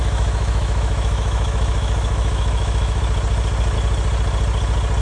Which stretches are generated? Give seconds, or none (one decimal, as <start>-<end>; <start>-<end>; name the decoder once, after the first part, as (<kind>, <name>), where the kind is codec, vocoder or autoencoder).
0.0-3.0 (autoencoder, DAC-VAE)